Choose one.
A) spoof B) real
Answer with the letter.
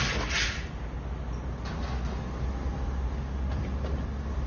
B